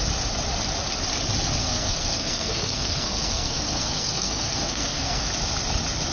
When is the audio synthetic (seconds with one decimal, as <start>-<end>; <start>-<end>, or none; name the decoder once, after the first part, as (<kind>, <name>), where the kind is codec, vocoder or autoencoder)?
1.6-5.3 (codec, SNAC)